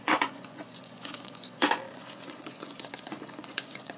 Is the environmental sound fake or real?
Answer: fake